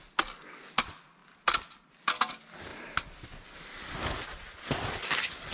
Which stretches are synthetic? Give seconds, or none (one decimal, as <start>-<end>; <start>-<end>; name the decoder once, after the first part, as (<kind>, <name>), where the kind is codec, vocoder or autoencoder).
none

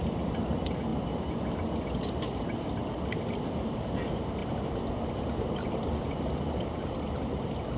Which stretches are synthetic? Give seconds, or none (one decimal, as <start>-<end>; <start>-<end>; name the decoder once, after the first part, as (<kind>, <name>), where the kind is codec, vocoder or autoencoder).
none